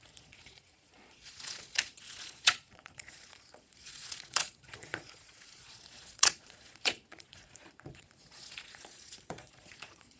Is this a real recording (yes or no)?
no